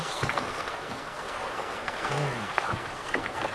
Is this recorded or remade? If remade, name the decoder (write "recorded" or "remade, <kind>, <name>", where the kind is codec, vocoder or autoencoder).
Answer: remade, codec, SNAC